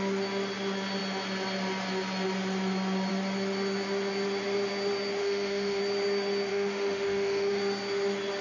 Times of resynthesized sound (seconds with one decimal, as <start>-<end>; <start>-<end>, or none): 5.2-5.8; 6.5-7.6